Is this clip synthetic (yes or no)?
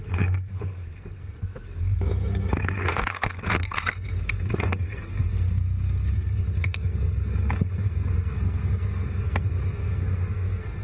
yes